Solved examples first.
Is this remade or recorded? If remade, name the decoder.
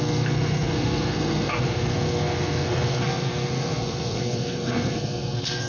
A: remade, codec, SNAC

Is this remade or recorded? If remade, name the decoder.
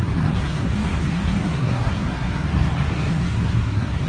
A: remade, codec, SNAC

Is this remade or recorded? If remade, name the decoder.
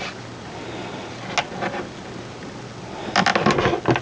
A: recorded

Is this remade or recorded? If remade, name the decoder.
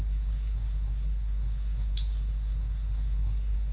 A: remade, codec, SNAC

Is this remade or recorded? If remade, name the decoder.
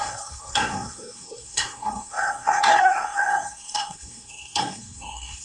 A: remade, codec, SNAC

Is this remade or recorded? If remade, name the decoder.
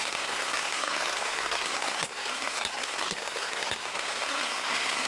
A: remade, codec, SNAC